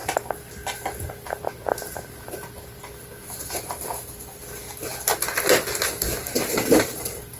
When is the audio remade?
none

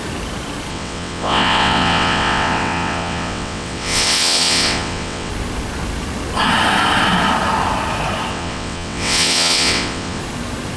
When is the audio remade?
0.7-5.3 (vocoder, WaveNeXt); 8.3-10.2

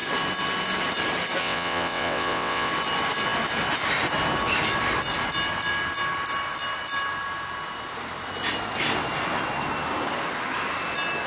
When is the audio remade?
1.4-2.7 (vocoder, WaveNeXt)

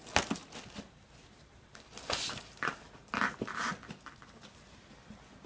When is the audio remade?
0.4-3.7 (vocoder, BigVGAN v2)

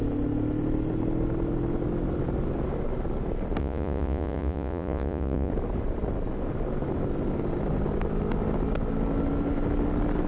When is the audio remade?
3.6-5.5 (vocoder, Vocos)

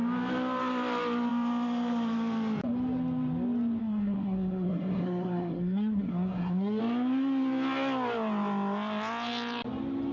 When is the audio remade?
3.8-6.8 (codec, SNAC)

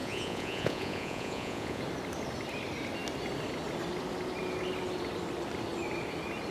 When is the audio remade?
0.0-1.8 (vocoder, Vocos)

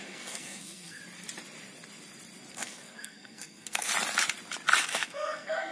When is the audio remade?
0.0-1.0 (codec, SNAC); 2.5-3.9; 4.8-5.7